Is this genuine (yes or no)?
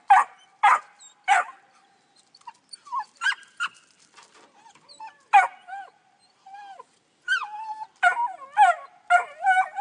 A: yes